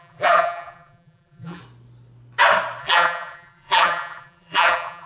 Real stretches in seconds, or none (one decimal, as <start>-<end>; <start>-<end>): 1.6-2.8